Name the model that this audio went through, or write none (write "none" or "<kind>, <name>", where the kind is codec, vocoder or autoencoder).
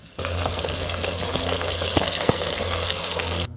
codec, SNAC